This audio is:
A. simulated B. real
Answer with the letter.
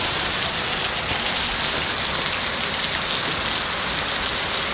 B